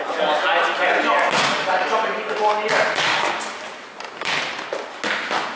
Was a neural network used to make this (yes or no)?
no